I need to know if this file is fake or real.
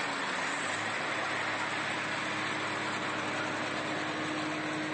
real